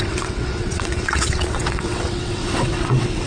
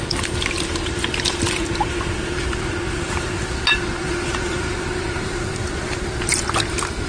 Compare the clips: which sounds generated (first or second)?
first